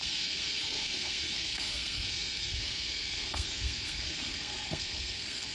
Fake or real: fake